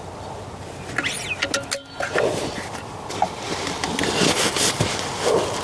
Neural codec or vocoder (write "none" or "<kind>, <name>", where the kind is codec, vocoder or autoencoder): none